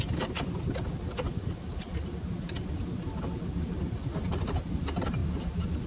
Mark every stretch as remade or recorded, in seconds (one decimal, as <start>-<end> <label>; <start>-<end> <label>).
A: 0.0-5.9 recorded